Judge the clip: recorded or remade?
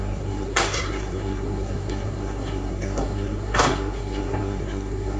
remade